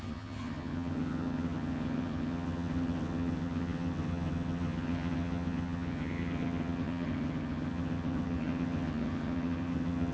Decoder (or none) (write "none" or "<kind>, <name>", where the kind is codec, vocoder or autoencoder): vocoder, HiFi-GAN